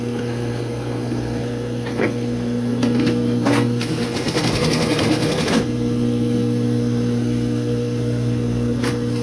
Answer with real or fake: fake